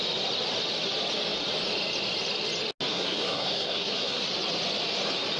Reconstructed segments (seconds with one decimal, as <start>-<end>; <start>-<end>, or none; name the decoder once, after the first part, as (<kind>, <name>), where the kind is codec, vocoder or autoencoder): 2.9-4.3 (codec, SNAC)